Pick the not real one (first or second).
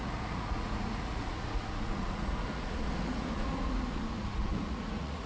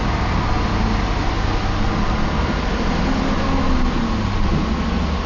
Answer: first